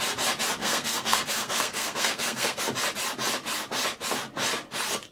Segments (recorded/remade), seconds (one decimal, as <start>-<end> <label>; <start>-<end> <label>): 0.0-0.6 recorded; 0.6-2.6 remade; 2.6-5.1 recorded